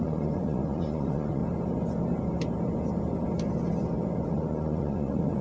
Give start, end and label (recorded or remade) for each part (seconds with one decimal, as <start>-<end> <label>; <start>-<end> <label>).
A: 0.0-1.4 remade; 1.4-4.3 recorded; 4.3-5.4 remade

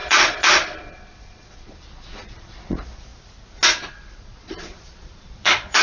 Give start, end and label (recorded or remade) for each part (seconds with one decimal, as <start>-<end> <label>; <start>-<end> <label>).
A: 0.0-3.1 remade; 3.1-3.8 recorded; 3.8-5.8 remade

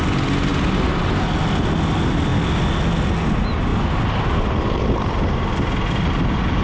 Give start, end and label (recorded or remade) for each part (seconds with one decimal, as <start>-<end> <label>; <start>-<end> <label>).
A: 0.0-6.6 recorded